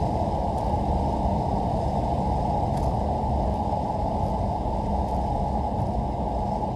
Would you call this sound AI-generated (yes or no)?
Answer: no